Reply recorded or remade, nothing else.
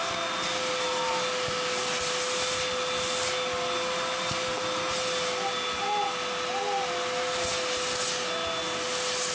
recorded